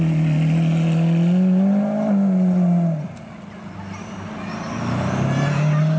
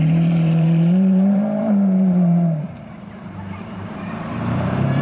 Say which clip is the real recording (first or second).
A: first